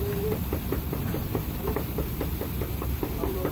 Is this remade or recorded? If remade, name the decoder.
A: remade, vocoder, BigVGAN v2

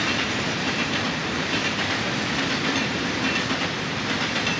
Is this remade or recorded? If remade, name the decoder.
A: remade, vocoder, BigVGAN v2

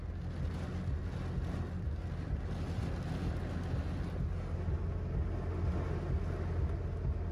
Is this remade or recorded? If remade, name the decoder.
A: recorded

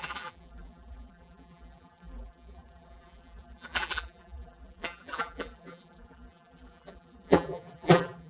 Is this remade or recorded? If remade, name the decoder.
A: remade, vocoder, BigVGAN v2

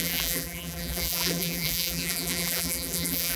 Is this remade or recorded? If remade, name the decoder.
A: remade, vocoder, BigVGAN v2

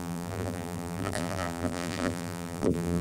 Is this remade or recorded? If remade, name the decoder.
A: remade, vocoder, BigVGAN v2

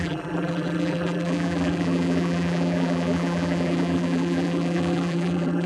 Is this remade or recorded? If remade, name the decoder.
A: remade, vocoder, BigVGAN v2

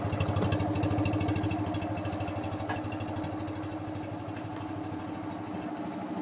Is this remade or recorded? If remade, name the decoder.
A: recorded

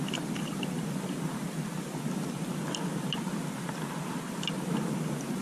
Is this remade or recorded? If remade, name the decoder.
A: recorded